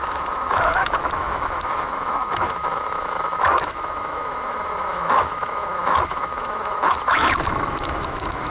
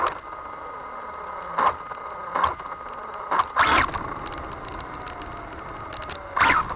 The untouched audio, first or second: second